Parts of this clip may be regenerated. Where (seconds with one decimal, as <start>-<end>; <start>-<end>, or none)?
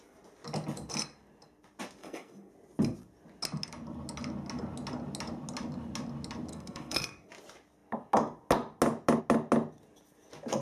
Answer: 2.0-2.5; 6.5-7.3